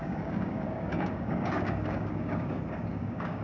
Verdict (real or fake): fake